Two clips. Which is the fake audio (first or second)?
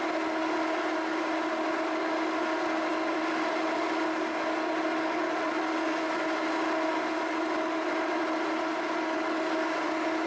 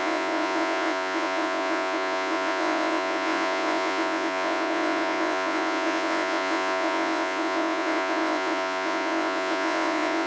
second